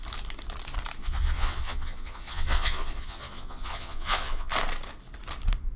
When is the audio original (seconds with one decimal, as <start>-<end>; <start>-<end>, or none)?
0.0-1.0; 4.5-5.8